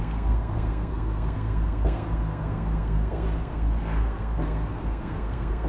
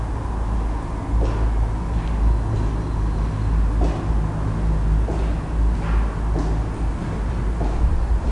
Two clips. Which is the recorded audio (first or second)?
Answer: second